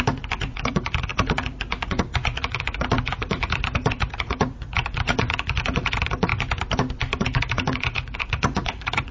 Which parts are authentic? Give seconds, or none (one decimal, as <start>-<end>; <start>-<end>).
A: 6.3-7.2